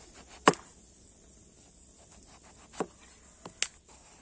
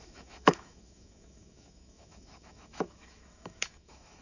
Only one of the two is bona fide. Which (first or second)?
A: first